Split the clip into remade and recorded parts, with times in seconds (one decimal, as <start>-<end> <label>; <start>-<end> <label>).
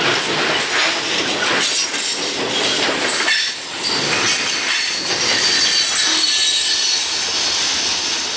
0.0-8.4 recorded